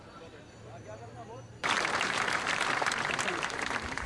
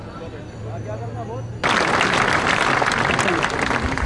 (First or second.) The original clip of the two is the second